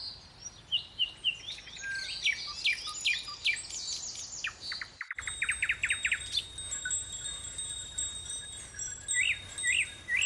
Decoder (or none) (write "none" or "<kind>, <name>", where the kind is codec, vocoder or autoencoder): none